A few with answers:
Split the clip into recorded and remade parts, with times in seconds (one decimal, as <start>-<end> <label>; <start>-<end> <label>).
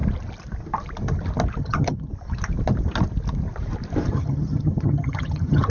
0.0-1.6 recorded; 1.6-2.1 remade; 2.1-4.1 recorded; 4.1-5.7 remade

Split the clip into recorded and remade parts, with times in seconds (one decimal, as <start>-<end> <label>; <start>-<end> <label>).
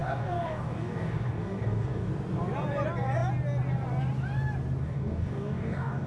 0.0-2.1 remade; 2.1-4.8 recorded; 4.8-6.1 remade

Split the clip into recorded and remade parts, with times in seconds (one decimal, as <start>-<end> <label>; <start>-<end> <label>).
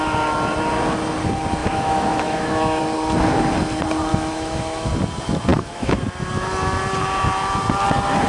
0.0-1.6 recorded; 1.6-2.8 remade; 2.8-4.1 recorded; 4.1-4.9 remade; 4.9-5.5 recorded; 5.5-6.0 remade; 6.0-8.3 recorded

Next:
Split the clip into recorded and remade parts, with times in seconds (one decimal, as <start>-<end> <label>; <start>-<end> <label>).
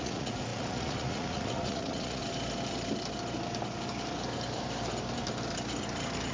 0.0-2.2 remade; 2.2-6.3 recorded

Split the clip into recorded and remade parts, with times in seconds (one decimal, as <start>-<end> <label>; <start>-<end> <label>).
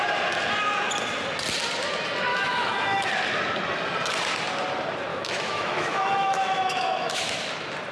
0.0-2.3 recorded; 2.3-3.1 remade; 3.1-5.1 recorded; 5.1-7.5 remade; 7.5-7.9 recorded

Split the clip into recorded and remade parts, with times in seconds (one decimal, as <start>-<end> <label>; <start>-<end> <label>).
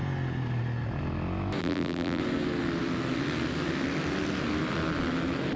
0.0-1.6 recorded; 1.6-2.2 remade; 2.2-5.6 recorded